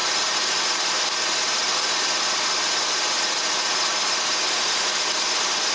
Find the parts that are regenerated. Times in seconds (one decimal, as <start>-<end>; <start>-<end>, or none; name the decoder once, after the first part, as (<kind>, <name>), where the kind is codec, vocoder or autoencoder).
none